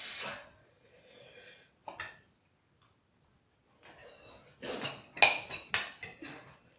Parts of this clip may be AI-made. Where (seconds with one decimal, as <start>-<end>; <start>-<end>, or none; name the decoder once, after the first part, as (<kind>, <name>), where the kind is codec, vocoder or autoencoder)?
none